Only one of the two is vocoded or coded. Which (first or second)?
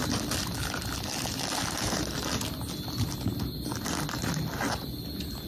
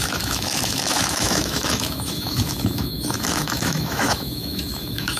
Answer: second